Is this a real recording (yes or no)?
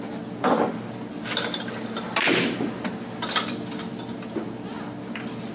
yes